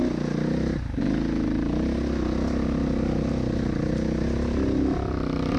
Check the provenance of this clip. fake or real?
real